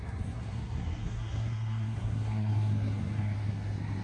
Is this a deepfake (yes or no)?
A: yes